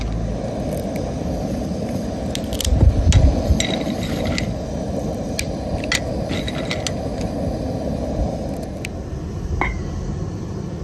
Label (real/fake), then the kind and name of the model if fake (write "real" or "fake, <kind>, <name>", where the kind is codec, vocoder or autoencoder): real